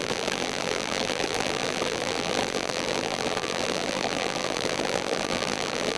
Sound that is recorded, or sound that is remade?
remade